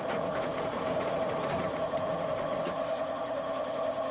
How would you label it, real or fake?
fake